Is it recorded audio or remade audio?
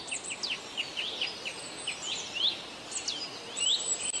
recorded